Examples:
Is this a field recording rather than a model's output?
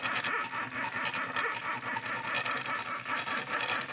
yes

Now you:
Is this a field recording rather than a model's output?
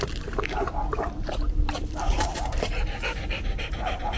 no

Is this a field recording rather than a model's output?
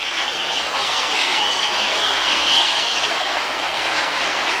no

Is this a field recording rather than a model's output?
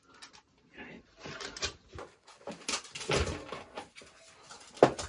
yes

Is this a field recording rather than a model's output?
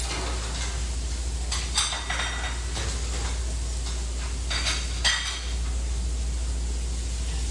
yes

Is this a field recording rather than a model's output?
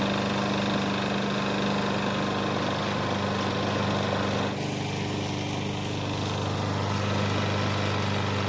yes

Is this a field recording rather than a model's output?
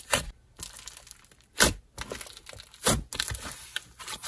yes